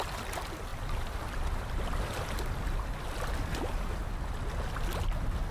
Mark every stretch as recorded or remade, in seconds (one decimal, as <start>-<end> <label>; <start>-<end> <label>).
0.0-5.5 recorded